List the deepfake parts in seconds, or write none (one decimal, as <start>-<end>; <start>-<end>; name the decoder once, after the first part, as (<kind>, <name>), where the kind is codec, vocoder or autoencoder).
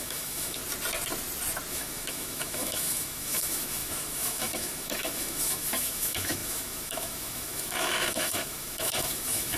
0.0-0.6 (autoencoder, DAC-VAE); 1.7-9.6